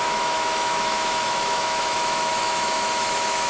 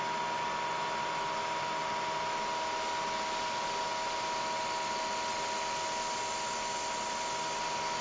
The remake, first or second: first